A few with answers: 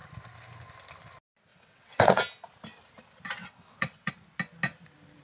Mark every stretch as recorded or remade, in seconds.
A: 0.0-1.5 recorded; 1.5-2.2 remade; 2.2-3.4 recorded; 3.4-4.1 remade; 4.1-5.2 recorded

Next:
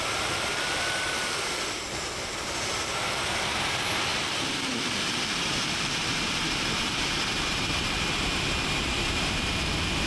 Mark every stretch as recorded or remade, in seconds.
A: 0.0-10.1 remade

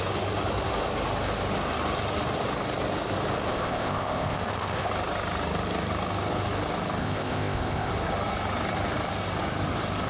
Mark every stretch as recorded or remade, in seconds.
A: 0.0-3.5 recorded; 3.5-4.9 remade; 4.9-7.0 recorded; 7.0-7.9 remade; 7.9-10.1 recorded

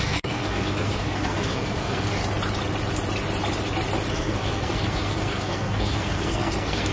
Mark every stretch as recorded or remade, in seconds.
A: 0.0-2.2 remade; 2.2-4.1 recorded; 4.1-6.9 remade

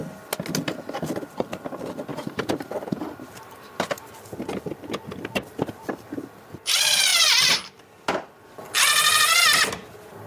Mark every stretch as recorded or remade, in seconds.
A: 0.0-2.1 recorded; 2.1-4.2 remade; 4.2-7.1 recorded; 7.1-7.8 remade; 7.8-10.3 recorded

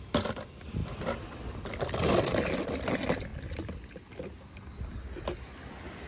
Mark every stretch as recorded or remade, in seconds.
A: 0.0-6.1 recorded

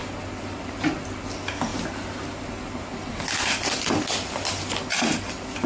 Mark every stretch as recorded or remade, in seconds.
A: 0.0-5.7 recorded